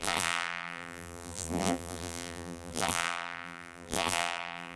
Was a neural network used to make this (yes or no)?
yes